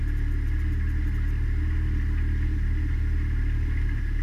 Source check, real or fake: real